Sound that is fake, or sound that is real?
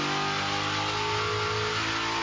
real